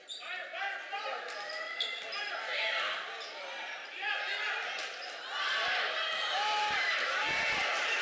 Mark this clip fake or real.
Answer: real